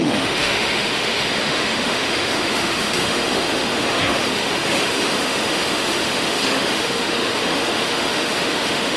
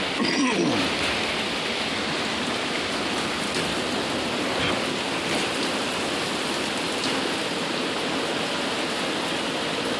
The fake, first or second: first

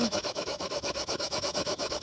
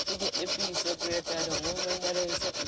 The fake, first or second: first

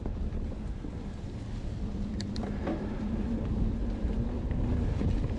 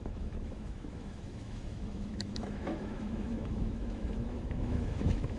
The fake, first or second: second